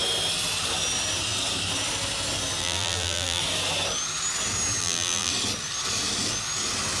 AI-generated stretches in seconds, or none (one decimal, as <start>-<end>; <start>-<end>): 2.6-3.4; 4.8-5.3